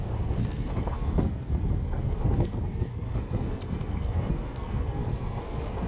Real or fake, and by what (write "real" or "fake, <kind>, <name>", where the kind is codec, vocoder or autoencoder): fake, codec, SNAC